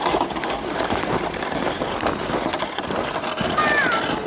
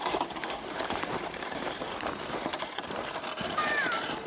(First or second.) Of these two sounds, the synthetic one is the second